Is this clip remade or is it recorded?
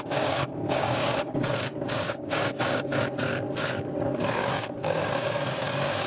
remade